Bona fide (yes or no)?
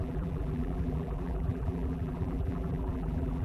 no